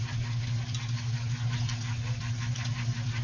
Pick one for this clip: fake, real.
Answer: real